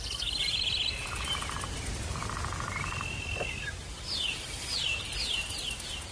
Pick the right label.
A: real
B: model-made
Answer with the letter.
A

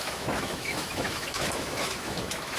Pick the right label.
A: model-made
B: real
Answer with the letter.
A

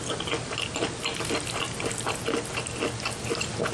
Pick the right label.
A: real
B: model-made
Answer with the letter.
A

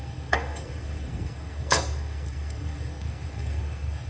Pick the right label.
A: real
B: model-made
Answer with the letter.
B